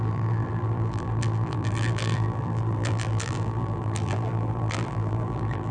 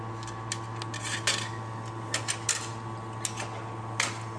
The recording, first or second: second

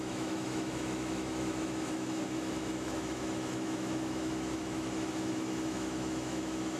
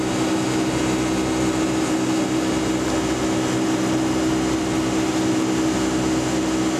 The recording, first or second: second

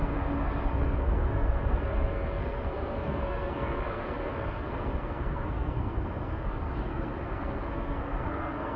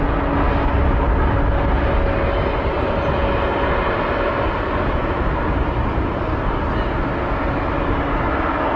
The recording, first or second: second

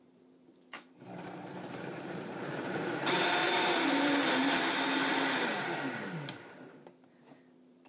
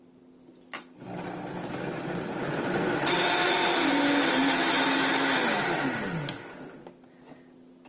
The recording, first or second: second